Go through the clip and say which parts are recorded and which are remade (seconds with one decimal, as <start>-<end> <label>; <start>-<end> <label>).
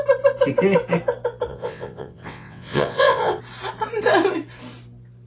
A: 0.0-1.5 recorded; 1.5-3.4 remade; 3.4-5.3 recorded